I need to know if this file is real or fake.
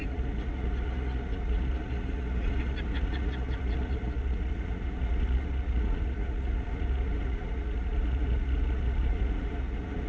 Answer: fake